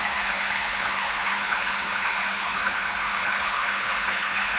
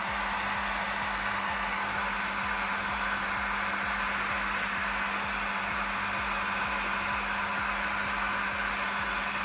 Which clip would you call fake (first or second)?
first